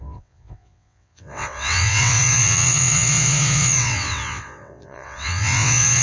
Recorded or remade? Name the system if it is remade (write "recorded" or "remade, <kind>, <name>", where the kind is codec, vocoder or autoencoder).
remade, vocoder, WaveNeXt